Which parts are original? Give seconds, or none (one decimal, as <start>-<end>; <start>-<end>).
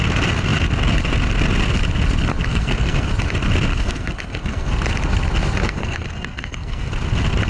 0.0-2.4; 3.1-3.7; 4.7-5.6; 6.9-7.5